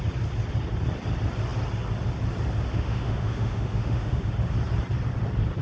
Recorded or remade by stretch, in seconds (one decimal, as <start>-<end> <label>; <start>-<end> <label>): 0.0-2.7 recorded; 2.7-4.3 remade; 4.3-5.6 recorded